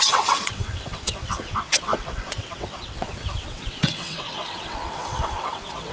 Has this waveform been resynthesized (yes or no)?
yes